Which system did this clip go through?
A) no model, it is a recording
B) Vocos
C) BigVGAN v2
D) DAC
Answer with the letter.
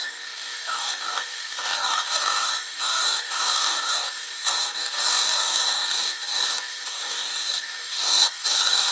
D